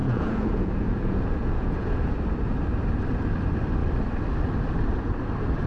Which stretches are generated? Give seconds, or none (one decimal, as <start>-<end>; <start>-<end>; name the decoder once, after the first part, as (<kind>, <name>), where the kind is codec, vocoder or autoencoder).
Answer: 0.0-2.1 (vocoder, Vocos)